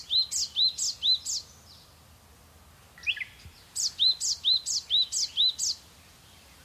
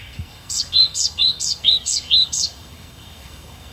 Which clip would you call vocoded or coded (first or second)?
second